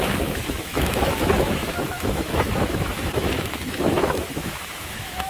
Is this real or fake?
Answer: fake